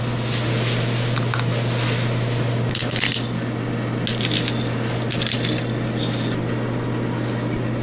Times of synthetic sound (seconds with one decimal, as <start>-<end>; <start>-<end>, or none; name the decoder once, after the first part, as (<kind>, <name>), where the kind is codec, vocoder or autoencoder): none